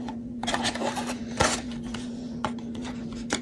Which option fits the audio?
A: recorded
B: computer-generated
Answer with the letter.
B